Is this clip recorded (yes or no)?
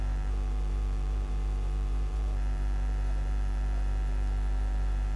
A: no